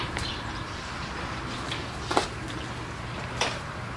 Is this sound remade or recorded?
remade